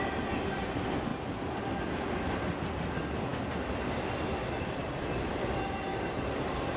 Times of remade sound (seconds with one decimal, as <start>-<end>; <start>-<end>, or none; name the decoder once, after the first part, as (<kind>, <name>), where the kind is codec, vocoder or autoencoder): 5.9-6.8 (vocoder, BigVGAN v2)

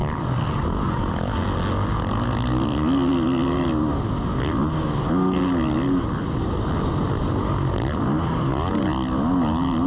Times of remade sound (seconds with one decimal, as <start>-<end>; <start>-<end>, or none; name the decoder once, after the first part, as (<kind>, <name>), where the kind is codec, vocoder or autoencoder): none

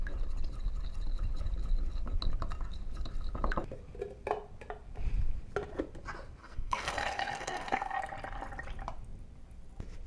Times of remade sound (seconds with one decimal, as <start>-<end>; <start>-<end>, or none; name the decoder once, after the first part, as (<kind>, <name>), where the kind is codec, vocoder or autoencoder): 6.4-8.0 (codec, SNAC)

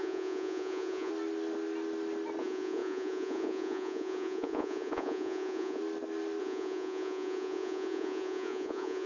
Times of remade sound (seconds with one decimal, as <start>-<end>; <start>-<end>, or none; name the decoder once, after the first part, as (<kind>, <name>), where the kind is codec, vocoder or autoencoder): 0.0-1.1 (vocoder, Vocos); 2.4-5.8; 6.4-9.1

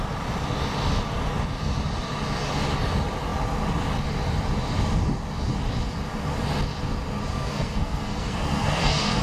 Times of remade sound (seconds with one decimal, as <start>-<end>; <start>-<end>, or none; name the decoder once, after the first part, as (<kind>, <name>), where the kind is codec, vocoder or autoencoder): 7.3-9.2 (codec, SNAC)

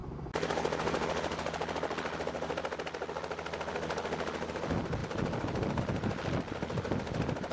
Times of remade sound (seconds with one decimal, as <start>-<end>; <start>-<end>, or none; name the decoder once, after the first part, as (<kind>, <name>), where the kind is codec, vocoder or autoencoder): none